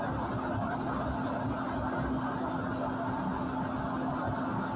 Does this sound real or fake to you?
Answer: real